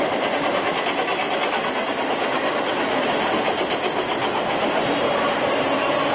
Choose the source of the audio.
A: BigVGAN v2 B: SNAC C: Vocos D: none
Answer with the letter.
D